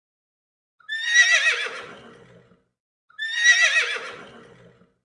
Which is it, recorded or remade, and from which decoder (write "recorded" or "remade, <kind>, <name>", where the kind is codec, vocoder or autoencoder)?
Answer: recorded